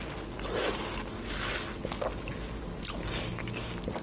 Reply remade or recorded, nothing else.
recorded